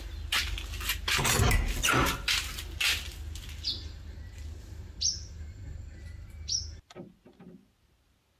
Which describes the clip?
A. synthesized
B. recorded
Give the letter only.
B